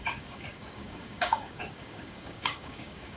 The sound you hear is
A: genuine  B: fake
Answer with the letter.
B